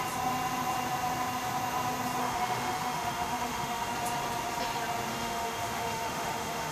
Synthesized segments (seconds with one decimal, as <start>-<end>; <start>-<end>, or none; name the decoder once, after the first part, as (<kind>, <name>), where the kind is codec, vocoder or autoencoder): 2.2-3.9 (autoencoder, DAC-VAE); 5.1-6.7